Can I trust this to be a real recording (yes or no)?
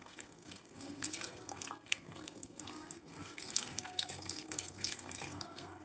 no